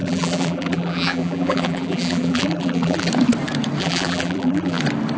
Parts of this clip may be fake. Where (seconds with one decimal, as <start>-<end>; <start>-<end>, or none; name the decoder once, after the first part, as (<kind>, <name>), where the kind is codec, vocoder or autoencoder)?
0.0-3.1 (vocoder, BigVGAN v2); 3.8-4.8